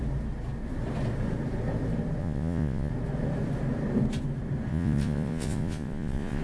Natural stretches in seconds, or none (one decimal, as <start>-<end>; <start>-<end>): 0.0-2.2; 2.9-4.7